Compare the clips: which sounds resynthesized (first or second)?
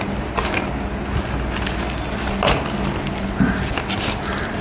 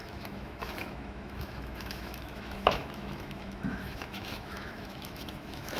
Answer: second